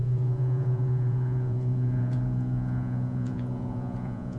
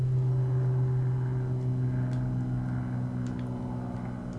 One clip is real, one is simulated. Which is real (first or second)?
second